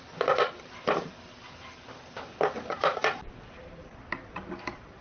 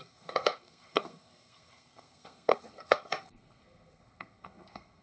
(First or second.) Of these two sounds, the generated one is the second